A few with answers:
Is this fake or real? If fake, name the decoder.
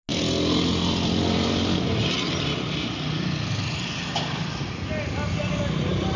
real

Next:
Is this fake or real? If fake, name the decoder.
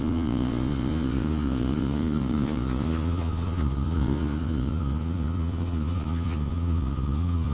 fake, vocoder, Vocos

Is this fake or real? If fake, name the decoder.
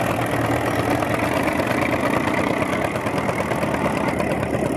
real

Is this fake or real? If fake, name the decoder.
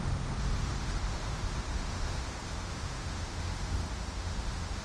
fake, autoencoder, DAC-VAE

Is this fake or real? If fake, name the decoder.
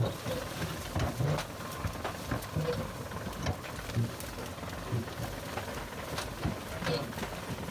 real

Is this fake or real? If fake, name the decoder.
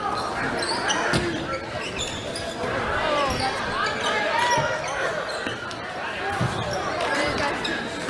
real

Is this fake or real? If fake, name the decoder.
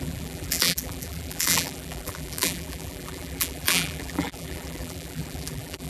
fake, vocoder, BigVGAN v2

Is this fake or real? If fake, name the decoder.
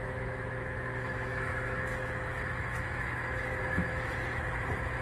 fake, autoencoder, DAC-VAE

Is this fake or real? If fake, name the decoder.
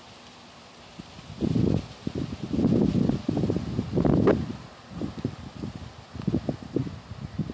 real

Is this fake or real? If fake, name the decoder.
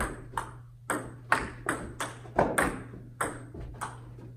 real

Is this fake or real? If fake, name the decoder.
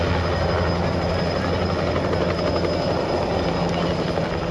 real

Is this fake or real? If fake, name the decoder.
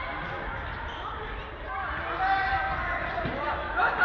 real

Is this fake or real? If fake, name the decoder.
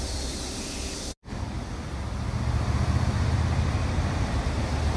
real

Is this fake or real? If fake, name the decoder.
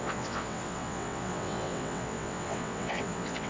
fake, vocoder, WaveNeXt